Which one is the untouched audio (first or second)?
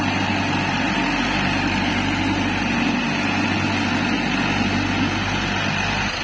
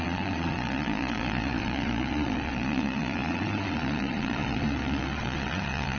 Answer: first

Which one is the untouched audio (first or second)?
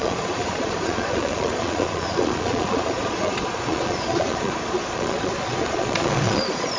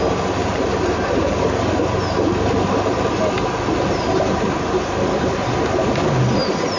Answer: second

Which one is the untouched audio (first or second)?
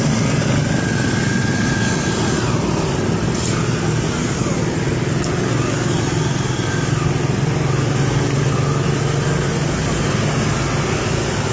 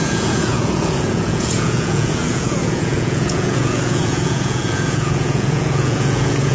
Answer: first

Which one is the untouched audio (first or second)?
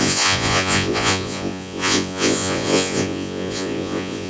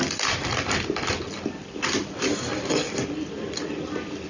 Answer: second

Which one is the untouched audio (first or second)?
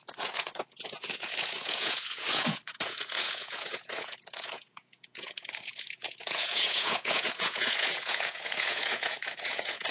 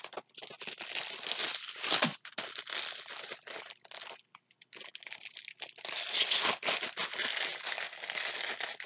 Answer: second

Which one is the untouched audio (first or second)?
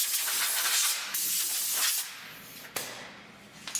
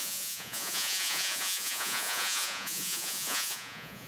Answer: first